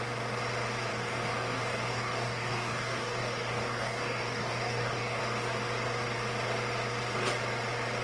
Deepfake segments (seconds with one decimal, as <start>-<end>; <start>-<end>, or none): 0.9-5.2